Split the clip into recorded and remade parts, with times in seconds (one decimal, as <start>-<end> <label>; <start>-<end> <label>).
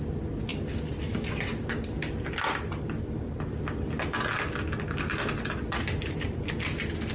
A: 0.0-7.1 recorded